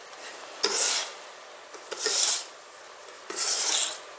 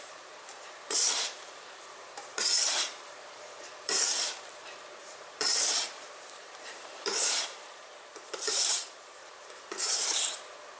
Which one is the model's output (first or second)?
second